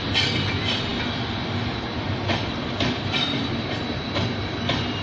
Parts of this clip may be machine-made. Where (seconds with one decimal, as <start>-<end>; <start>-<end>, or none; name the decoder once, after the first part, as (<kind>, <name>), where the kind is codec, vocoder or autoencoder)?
0.0-5.0 (vocoder, BigVGAN v2)